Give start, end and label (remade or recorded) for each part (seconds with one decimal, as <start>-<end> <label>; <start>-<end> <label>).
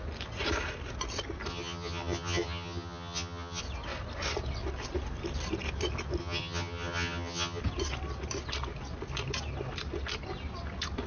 0.0-1.5 recorded; 1.5-3.6 remade; 3.6-6.2 recorded; 6.2-7.6 remade; 7.6-11.1 recorded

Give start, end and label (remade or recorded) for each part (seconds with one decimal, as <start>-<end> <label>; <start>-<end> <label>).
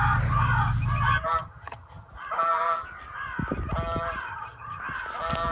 0.0-1.4 recorded; 1.4-2.1 remade; 2.1-4.3 recorded; 4.3-4.8 remade; 4.8-5.5 recorded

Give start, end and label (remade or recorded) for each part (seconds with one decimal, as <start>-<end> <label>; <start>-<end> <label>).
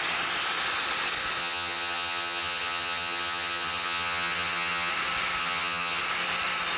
0.0-1.4 recorded; 1.4-4.9 remade; 4.9-5.4 recorded; 5.4-6.0 remade; 6.0-6.8 recorded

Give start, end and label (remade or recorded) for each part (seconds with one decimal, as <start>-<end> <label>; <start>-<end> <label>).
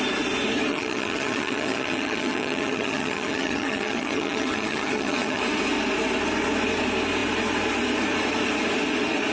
0.0-0.7 recorded; 0.7-5.4 remade; 5.4-9.3 recorded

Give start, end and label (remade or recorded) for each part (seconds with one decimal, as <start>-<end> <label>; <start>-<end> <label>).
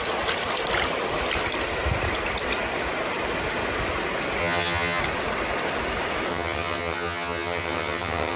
0.0-4.4 recorded; 4.4-5.0 remade; 5.0-6.3 recorded; 6.3-8.4 remade